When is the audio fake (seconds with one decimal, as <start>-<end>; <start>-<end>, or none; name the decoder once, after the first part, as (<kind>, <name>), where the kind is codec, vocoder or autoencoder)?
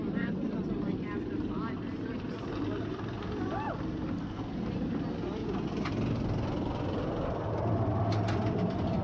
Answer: 0.0-5.4 (vocoder, BigVGAN v2); 5.9-9.0